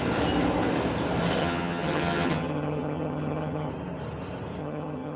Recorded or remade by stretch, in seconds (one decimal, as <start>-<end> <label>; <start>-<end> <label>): 0.0-1.4 recorded; 1.4-3.7 remade; 3.7-4.6 recorded; 4.6-5.2 remade